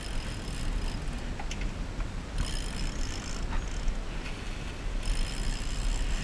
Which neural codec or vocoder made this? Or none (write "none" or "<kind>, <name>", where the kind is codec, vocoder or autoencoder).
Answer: none